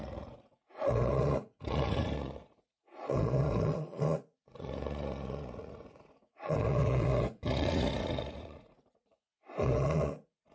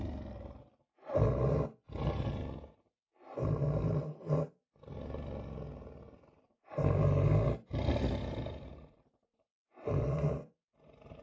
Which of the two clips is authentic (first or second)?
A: second